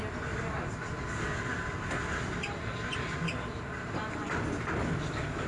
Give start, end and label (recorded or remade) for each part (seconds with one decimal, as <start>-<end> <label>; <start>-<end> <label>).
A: 0.0-5.5 recorded